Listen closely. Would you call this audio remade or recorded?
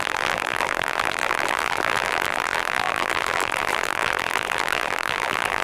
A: remade